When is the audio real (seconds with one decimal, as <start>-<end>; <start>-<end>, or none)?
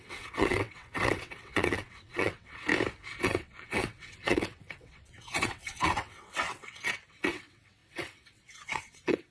2.7-3.2